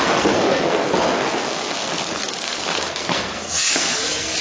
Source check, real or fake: fake